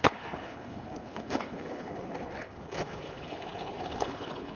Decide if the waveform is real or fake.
fake